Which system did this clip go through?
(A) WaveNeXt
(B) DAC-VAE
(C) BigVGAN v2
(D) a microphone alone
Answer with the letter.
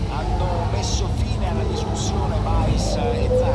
D